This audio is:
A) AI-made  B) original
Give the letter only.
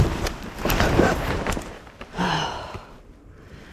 B